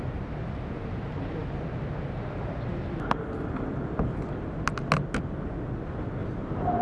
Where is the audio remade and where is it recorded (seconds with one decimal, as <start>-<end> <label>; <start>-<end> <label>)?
0.0-6.2 recorded; 6.2-6.8 remade

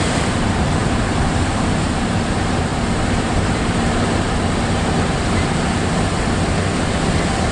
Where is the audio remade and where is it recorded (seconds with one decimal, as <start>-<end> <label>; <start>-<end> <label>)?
0.0-2.7 remade; 2.7-7.5 recorded

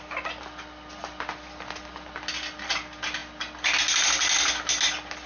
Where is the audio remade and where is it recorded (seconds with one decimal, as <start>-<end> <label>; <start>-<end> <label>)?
0.0-5.3 recorded

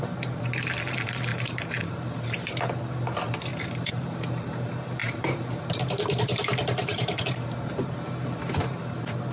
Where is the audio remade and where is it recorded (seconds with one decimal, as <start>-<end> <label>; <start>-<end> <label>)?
0.0-1.3 recorded; 1.3-2.5 remade; 2.5-3.5 recorded; 3.5-4.5 remade; 4.5-5.0 recorded; 5.0-7.2 remade; 7.2-9.3 recorded

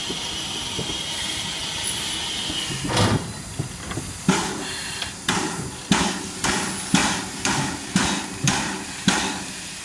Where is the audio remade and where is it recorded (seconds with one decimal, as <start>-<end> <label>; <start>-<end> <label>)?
0.0-1.6 remade; 1.6-2.9 recorded; 2.9-7.0 remade; 7.0-8.6 recorded; 8.6-9.8 remade